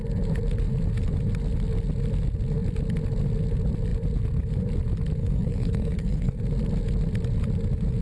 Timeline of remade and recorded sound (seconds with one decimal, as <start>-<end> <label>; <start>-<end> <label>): 0.0-5.2 recorded; 5.2-6.4 remade; 6.4-8.0 recorded